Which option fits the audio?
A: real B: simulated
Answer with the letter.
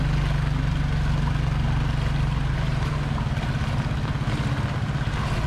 A